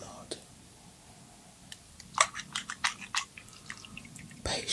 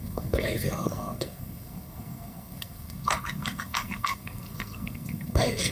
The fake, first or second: second